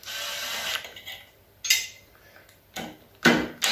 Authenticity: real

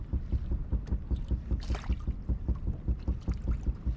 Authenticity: real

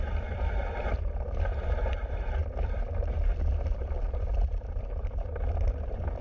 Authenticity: fake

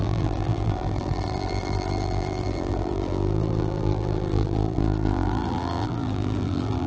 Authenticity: fake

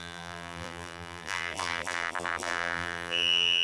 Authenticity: fake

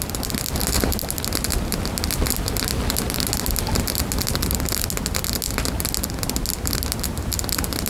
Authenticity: real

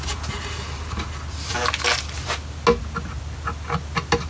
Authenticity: real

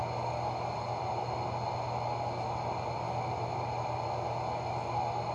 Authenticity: real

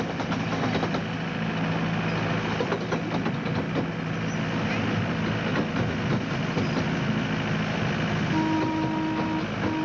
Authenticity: real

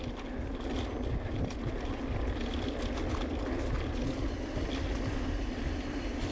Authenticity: real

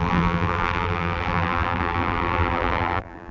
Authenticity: fake